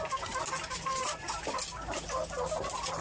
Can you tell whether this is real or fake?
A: real